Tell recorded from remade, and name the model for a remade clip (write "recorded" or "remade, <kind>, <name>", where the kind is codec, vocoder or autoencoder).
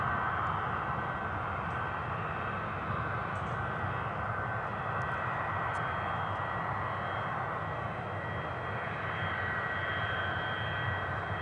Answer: recorded